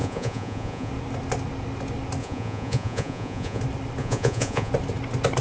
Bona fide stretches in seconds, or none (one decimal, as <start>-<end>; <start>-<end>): 0.9-2.2; 3.6-4.0; 4.7-5.4